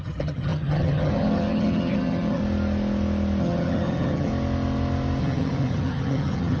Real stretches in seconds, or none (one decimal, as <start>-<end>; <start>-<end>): 2.4-3.4; 4.3-5.2